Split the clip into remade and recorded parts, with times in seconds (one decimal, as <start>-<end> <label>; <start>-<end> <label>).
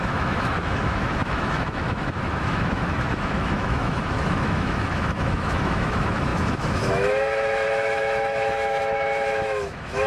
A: 0.0-10.1 remade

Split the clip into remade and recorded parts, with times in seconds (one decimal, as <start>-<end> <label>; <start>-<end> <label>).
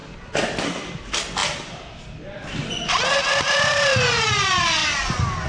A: 0.0-5.5 recorded